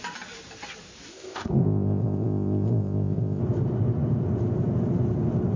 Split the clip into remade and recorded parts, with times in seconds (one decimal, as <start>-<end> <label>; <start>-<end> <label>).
0.0-1.1 recorded; 1.1-3.4 remade; 3.4-5.6 recorded